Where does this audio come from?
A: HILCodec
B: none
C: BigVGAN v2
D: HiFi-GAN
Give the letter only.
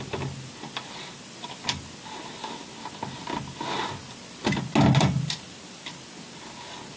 B